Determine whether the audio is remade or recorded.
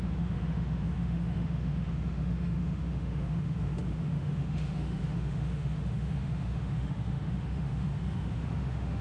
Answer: remade